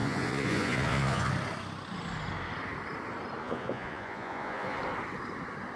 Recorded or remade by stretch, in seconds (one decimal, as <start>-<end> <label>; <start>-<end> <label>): 0.0-1.3 remade; 1.3-3.4 recorded; 3.4-4.8 remade; 4.8-5.8 recorded

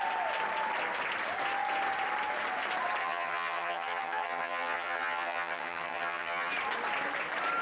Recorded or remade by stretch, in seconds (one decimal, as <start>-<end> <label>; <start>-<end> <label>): 0.0-3.0 recorded; 3.0-6.5 remade; 6.5-7.6 recorded

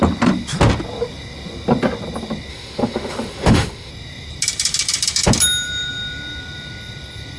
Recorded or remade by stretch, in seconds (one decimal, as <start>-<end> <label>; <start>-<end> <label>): 0.0-2.5 recorded; 2.5-3.9 remade; 3.9-7.4 recorded

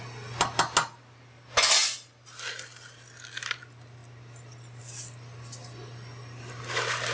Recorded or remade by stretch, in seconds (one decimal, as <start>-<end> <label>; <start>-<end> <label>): 0.0-7.1 recorded